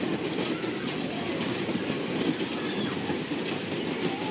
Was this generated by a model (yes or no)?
no